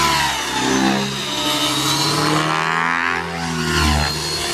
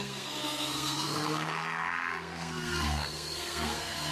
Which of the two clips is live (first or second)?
first